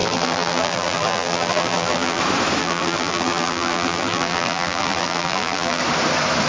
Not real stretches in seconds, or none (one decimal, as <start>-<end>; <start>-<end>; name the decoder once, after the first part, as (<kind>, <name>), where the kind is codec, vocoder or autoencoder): 0.0-2.2 (vocoder, BigVGAN v2); 2.6-5.8